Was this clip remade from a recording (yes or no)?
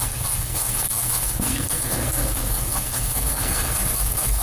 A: yes